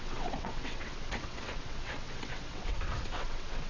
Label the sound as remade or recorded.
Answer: remade